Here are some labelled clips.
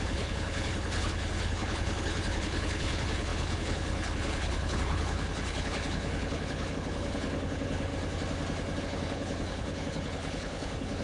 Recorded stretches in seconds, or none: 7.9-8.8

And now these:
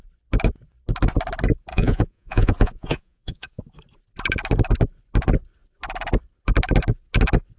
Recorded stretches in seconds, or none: 0.0-1.7; 3.6-7.6

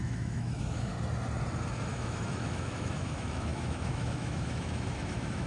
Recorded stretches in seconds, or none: 0.9-1.9

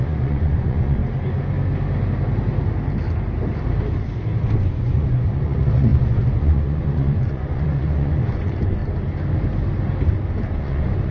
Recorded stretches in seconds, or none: 1.0-4.6; 8.8-10.4

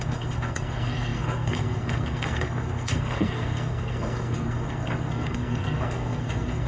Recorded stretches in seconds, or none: none

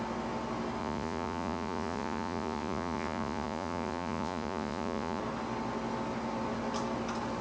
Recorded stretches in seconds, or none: 0.0-0.8; 5.2-7.4

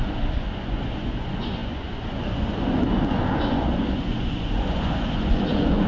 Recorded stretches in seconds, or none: none

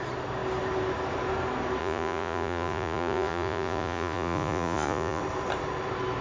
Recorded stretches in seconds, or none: 0.0-1.8; 5.2-6.2